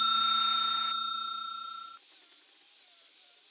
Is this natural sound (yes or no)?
yes